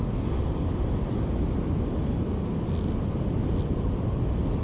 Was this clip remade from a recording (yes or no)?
no